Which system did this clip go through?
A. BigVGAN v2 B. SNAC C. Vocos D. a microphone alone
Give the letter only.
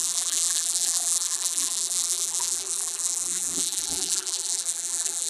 A